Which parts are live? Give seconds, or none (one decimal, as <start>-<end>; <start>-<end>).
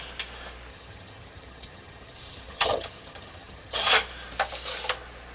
0.0-0.7; 3.9-5.3